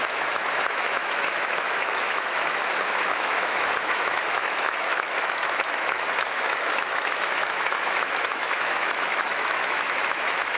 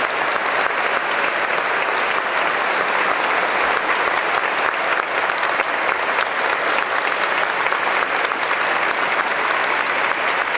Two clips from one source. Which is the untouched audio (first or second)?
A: second